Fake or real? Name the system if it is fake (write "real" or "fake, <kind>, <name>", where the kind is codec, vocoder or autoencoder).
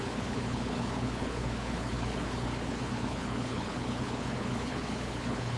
fake, codec, HILCodec